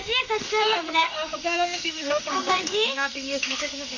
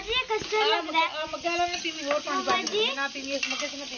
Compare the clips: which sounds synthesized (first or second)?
first